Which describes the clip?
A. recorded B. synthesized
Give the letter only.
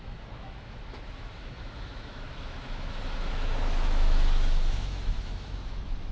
B